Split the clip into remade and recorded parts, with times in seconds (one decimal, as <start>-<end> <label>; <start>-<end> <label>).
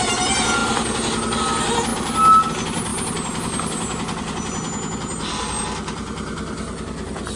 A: 0.0-7.4 recorded